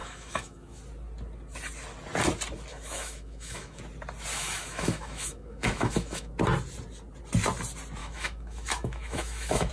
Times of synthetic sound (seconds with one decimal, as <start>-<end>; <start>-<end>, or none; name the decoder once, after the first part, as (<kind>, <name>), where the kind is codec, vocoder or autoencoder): 0.0-0.8 (autoencoder, DAC-VAE); 2.7-3.8; 4.3-6.3; 8.0-9.7